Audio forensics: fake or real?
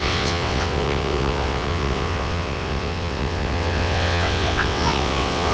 fake